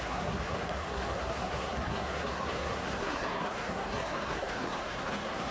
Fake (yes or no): yes